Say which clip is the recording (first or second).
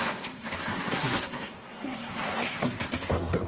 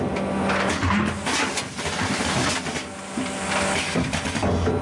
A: second